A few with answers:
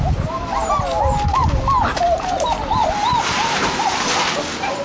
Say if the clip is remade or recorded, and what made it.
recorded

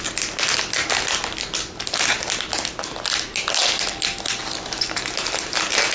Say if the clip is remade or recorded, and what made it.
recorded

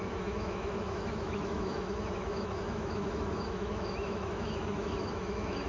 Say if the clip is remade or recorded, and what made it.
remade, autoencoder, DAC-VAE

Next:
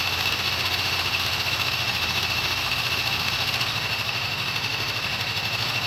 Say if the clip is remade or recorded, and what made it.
remade, autoencoder, DAC-VAE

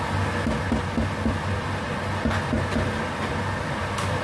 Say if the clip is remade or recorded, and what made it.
recorded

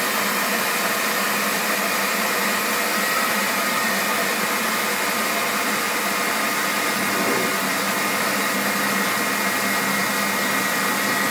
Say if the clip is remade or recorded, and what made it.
recorded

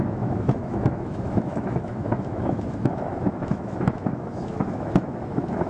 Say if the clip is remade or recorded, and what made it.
remade, autoencoder, DAC-VAE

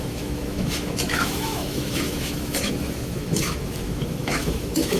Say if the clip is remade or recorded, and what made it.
remade, autoencoder, DAC-VAE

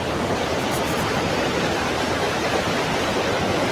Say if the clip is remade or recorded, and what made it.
recorded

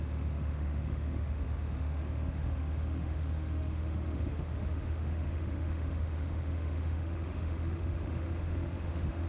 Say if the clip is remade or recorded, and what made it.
remade, autoencoder, DAC-VAE